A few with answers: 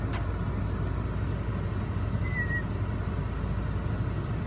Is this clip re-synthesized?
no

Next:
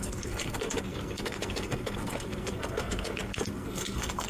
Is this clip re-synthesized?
yes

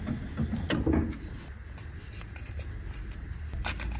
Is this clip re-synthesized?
no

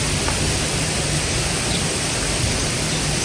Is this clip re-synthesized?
no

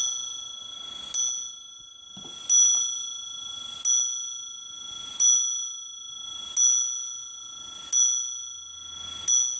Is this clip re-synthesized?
no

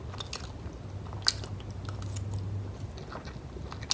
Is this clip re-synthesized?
no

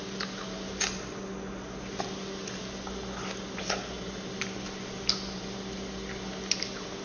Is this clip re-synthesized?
no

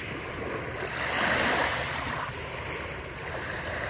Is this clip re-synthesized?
no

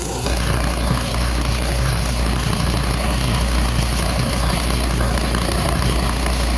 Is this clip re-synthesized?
yes